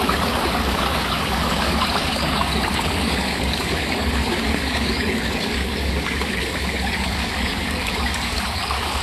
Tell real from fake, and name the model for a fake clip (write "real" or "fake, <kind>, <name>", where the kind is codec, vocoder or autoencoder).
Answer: fake, codec, DAC